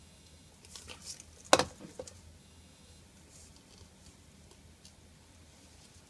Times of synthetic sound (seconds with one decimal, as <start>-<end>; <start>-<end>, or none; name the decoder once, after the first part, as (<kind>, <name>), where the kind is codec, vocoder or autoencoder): 0.0-0.5 (autoencoder, DAC-VAE); 2.4-3.0